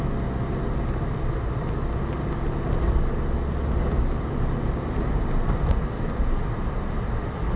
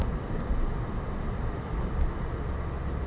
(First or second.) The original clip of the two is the first